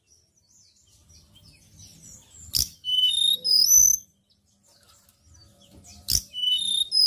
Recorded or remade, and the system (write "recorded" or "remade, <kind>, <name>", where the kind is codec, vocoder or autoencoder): recorded